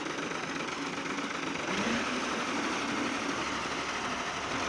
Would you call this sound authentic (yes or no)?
yes